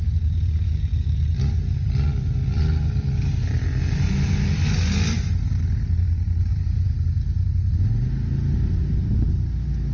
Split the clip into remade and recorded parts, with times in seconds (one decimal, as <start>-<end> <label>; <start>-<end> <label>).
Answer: 0.0-9.9 recorded